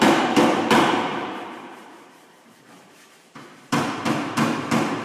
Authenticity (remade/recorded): remade